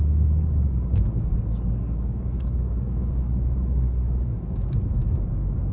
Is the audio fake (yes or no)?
yes